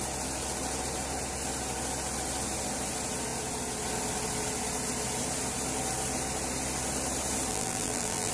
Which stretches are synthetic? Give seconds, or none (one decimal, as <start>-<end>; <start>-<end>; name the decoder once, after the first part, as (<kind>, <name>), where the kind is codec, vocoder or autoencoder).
7.5-8.3 (vocoder, BigVGAN v2)

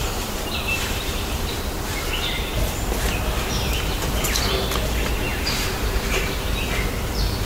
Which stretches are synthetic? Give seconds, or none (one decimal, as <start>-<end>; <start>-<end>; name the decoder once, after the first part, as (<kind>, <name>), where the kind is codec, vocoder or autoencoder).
0.0-1.5 (vocoder, BigVGAN v2); 5.3-6.2

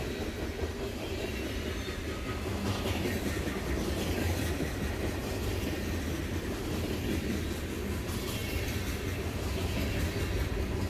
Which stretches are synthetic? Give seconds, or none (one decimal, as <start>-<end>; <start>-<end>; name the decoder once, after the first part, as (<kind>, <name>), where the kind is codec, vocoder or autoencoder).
none

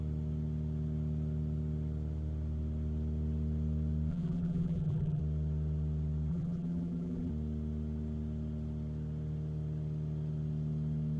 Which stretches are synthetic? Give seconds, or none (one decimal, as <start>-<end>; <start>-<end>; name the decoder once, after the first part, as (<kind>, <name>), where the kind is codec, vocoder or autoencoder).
4.1-5.2 (vocoder, BigVGAN v2); 6.3-7.3

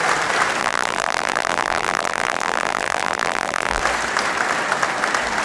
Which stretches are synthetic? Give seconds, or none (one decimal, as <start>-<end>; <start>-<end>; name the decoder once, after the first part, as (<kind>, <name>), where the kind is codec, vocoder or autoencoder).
0.6-3.8 (vocoder, BigVGAN v2)

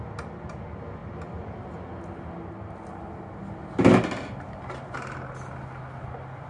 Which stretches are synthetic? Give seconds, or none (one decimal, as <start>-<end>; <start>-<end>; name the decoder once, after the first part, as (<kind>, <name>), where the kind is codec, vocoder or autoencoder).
none